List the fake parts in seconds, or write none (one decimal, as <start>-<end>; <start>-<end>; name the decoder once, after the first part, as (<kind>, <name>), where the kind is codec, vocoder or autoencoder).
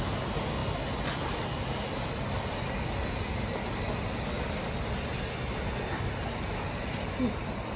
none